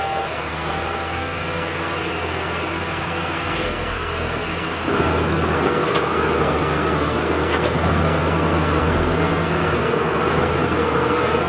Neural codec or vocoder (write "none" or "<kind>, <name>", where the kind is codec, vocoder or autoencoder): codec, SNAC